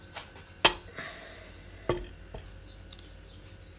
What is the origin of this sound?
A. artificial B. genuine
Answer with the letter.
B